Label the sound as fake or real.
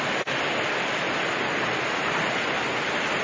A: real